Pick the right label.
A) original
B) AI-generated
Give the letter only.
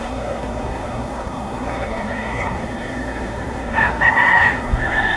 B